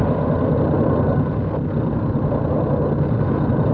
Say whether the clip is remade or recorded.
recorded